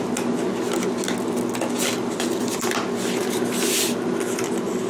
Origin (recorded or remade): recorded